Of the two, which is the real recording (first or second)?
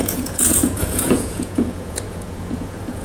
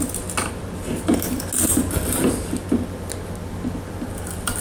second